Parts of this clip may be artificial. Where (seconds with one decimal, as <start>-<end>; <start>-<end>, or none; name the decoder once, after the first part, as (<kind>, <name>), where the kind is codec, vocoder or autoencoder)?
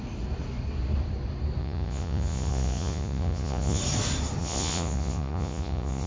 1.6-3.8 (vocoder, Vocos); 4.4-6.1